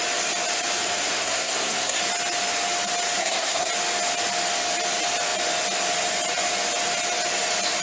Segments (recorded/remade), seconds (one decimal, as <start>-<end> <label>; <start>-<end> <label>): 0.0-1.0 recorded; 1.0-2.0 remade; 2.0-3.2 recorded; 3.2-3.7 remade; 3.7-7.8 recorded